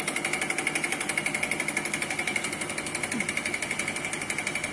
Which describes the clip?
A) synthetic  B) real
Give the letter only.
B